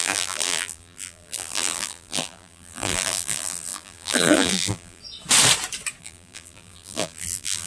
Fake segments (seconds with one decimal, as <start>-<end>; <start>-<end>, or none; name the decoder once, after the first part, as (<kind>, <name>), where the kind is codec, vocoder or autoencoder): 0.0-5.0 (vocoder, BigVGAN v2); 6.0-7.7